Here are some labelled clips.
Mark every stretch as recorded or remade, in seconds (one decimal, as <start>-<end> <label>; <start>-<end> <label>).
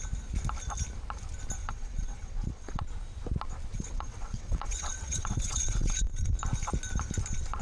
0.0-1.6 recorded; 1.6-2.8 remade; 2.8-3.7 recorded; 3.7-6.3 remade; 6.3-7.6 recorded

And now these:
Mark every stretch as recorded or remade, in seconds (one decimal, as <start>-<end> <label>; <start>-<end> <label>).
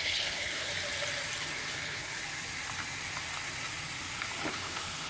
0.0-0.7 remade; 0.7-1.7 recorded; 1.7-2.2 remade; 2.2-4.5 recorded; 4.5-5.1 remade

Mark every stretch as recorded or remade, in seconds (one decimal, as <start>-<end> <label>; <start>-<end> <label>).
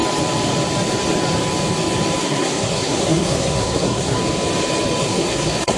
0.0-2.2 recorded; 2.2-4.2 remade; 4.2-5.0 recorded; 5.0-5.8 remade